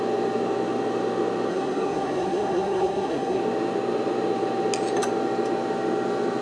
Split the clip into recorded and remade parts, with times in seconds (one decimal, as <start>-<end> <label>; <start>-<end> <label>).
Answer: 0.0-1.5 recorded; 1.5-3.4 remade; 3.4-6.4 recorded